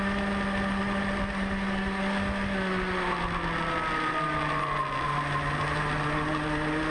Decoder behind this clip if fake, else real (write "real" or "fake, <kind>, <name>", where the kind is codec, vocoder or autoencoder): real